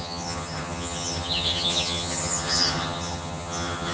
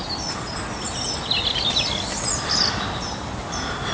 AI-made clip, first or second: first